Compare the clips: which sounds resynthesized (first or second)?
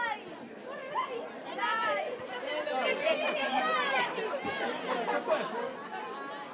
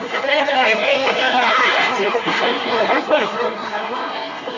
second